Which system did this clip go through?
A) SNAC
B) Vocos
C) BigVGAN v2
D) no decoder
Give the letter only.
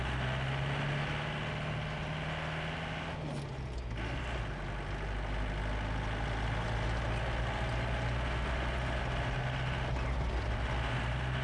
D